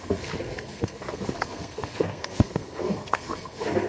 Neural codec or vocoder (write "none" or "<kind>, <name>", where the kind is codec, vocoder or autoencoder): codec, SNAC